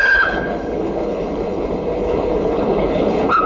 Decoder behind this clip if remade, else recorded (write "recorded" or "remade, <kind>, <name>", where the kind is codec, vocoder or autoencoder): remade, codec, HILCodec